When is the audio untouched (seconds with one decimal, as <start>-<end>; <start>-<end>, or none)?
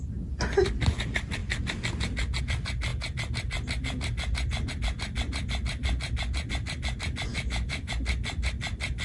0.0-7.3; 7.9-9.0